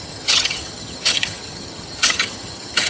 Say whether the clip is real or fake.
fake